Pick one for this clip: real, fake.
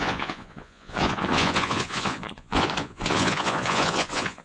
fake